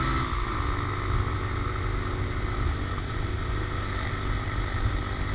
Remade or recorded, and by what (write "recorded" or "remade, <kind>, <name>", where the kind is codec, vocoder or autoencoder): recorded